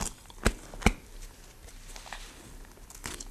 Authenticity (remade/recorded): recorded